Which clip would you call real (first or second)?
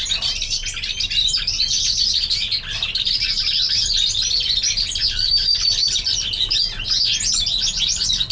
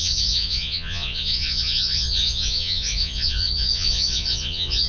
first